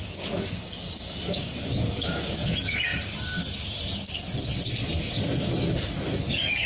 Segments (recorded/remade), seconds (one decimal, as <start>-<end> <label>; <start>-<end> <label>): 0.0-2.9 remade; 2.9-5.7 recorded; 5.7-6.7 remade